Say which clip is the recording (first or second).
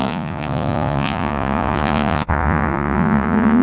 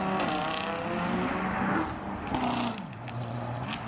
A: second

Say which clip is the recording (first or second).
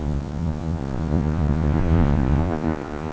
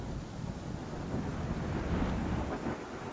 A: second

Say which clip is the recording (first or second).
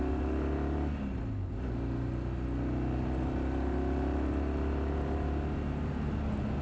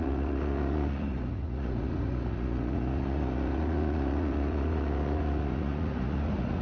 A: first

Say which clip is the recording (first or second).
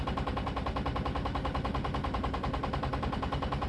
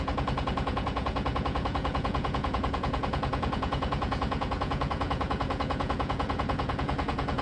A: first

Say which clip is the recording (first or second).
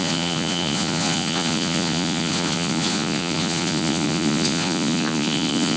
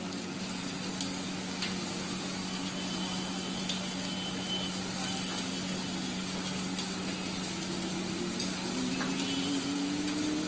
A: second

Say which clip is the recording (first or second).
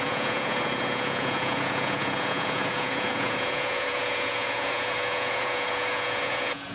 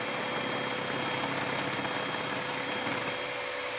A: second